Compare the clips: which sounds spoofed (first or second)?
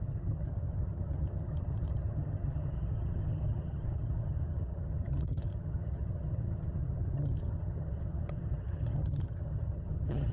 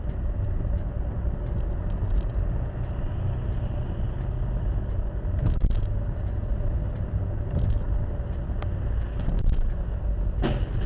first